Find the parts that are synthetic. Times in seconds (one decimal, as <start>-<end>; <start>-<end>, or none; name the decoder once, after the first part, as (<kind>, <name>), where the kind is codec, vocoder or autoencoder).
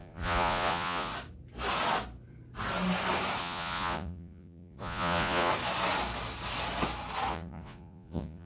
0.0-1.1 (vocoder, Vocos); 3.4-5.5; 7.3-8.5